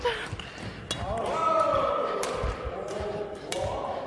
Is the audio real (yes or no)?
yes